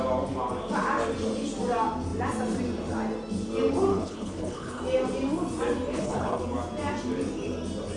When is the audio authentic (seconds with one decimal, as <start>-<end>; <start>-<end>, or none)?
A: 0.0-3.9; 4.8-5.9; 6.4-8.0